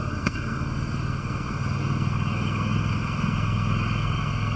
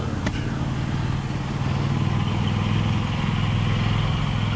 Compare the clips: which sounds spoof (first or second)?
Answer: first